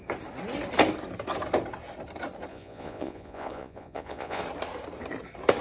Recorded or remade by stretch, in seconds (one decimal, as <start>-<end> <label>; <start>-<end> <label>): 0.0-2.5 recorded; 2.5-4.4 remade; 4.4-5.6 recorded